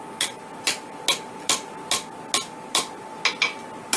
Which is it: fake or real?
real